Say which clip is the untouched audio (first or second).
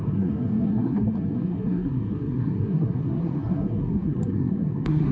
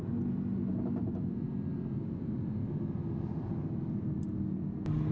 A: second